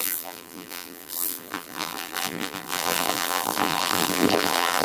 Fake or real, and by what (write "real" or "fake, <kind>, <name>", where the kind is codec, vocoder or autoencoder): fake, vocoder, BigVGAN v2